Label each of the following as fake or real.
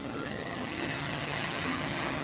fake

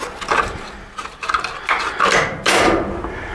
real